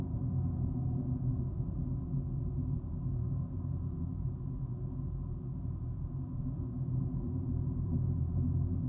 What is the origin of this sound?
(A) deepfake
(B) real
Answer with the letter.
A